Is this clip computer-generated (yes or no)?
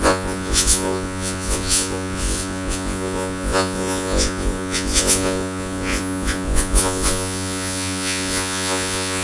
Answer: yes